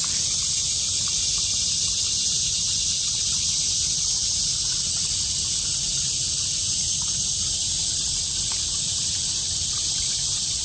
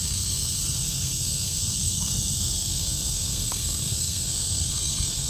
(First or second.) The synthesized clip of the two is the second